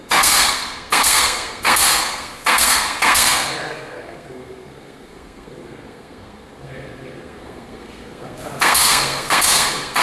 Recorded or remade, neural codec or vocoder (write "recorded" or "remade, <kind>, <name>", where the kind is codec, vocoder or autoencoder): remade, codec, SNAC